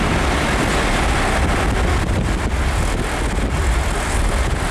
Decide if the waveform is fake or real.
real